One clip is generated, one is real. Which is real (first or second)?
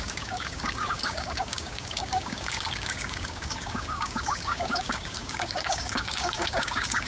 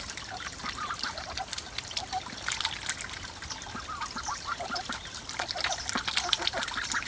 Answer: second